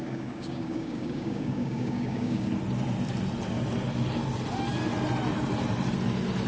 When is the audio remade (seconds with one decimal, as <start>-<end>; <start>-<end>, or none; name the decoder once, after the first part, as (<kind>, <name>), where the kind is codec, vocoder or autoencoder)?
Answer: 0.0-2.5 (codec, DAC)